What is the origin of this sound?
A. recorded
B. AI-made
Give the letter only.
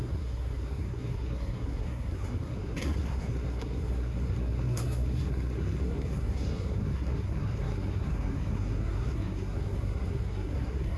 B